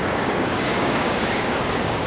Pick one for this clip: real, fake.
fake